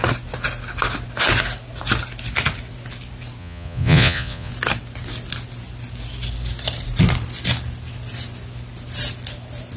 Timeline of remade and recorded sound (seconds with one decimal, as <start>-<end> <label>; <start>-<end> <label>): 0.0-3.4 recorded; 3.4-4.5 remade; 4.5-9.8 recorded